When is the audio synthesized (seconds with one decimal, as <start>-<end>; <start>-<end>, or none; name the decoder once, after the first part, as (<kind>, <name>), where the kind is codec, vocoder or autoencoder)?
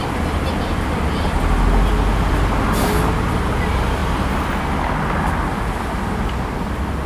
none